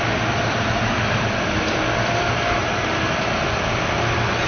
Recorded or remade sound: recorded